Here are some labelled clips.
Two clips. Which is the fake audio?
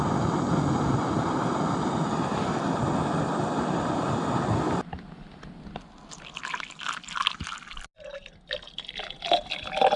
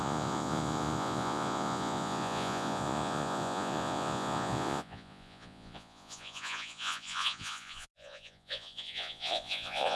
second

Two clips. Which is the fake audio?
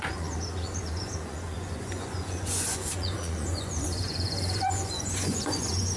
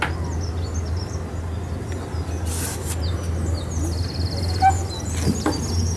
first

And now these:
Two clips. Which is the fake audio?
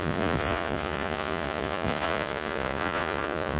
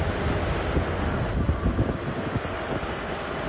first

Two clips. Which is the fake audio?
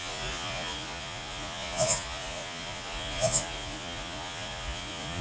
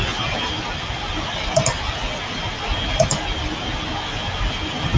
first